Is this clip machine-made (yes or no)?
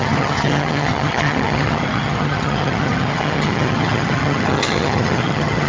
yes